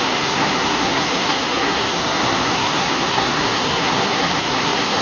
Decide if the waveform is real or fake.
fake